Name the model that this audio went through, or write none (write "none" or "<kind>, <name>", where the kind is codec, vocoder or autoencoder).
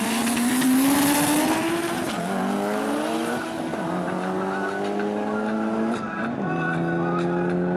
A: none